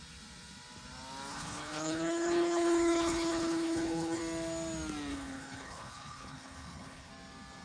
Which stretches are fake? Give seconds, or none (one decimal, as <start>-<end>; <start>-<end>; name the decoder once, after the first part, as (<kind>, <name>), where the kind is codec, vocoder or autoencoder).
1.3-4.2 (codec, HILCodec); 5.1-7.1